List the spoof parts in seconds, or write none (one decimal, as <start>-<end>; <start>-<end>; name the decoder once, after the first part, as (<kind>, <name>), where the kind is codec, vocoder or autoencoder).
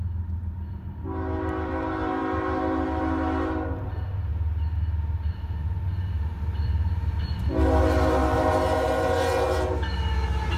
6.3-7.2 (vocoder, BigVGAN v2)